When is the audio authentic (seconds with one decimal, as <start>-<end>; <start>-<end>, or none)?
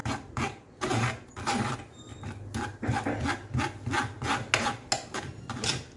1.3-6.0